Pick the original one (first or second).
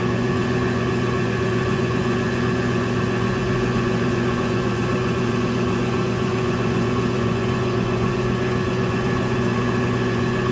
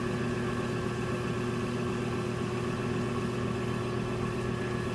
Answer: second